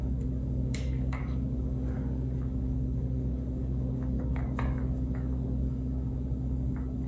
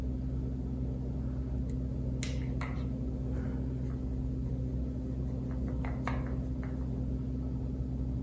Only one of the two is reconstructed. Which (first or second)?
first